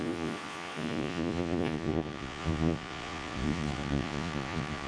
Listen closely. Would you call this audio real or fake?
fake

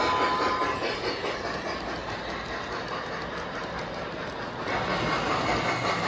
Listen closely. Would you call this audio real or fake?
real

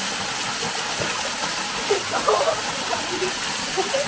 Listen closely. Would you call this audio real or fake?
real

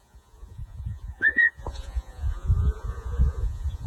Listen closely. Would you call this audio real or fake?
fake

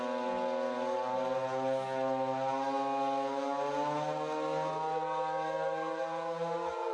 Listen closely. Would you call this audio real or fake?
real